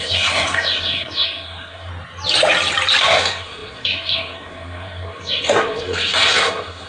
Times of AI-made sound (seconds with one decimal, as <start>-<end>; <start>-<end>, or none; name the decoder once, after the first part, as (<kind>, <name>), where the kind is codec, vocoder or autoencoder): 0.0-1.9 (codec, SNAC); 3.0-6.9